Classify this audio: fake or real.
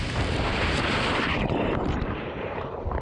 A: fake